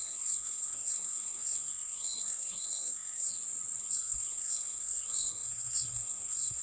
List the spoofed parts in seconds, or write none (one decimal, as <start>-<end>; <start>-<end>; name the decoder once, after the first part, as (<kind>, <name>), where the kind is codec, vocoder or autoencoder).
0.0-3.3 (codec, SNAC); 3.8-6.6